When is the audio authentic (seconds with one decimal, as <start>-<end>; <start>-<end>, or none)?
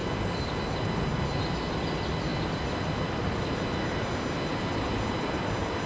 0.0-5.9